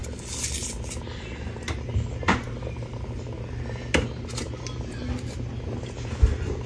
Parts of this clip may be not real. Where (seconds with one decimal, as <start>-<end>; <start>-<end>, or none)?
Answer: none